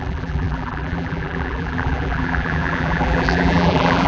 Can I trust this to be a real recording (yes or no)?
no